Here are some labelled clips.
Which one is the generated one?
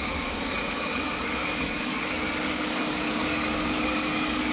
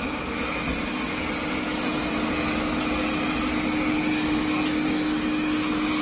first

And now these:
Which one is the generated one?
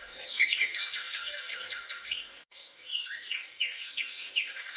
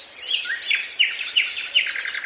first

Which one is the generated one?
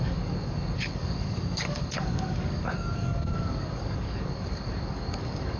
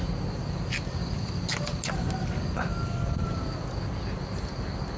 first